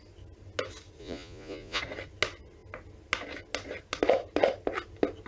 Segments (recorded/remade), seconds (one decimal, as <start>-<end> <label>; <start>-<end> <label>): 0.0-1.0 recorded; 1.0-1.8 remade; 1.8-5.3 recorded